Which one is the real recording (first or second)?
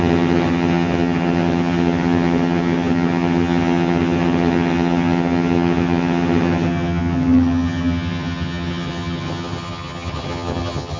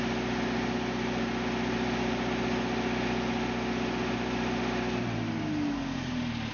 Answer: second